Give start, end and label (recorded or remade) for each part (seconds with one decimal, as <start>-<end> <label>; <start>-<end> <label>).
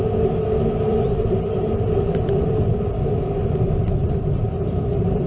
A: 0.0-0.9 recorded; 0.9-1.7 remade; 1.7-4.0 recorded; 4.0-5.3 remade